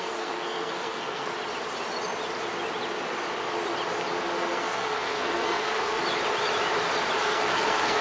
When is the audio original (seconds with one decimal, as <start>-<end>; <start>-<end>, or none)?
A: 1.3-4.5; 6.0-7.2